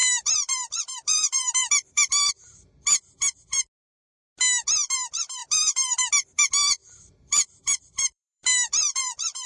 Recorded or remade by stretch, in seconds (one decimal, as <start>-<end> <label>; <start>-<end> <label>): 0.0-2.3 remade; 2.3-5.4 recorded; 5.4-6.0 remade; 6.0-6.8 recorded; 6.8-9.5 remade